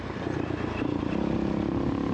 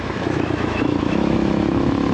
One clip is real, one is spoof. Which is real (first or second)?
first